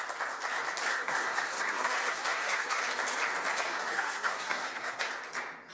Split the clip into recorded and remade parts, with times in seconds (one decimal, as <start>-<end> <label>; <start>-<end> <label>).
0.0-0.9 recorded; 0.9-2.8 remade; 2.8-3.5 recorded; 3.5-5.1 remade; 5.1-5.7 recorded